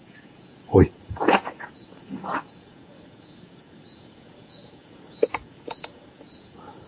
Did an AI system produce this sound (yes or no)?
yes